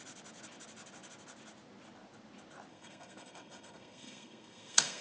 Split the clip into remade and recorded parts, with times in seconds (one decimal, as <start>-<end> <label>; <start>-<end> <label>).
0.0-2.7 recorded; 2.7-5.0 remade

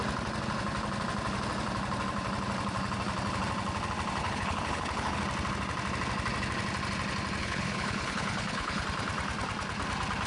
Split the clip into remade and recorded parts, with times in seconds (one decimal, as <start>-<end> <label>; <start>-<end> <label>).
0.0-4.2 recorded; 4.2-5.2 remade; 5.2-7.4 recorded; 7.4-8.8 remade; 8.8-10.3 recorded